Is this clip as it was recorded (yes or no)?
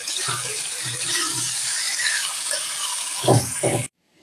no